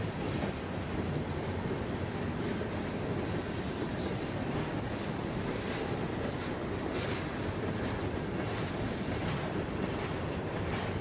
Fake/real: real